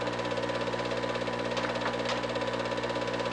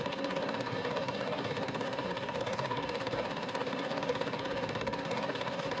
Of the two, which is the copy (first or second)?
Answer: second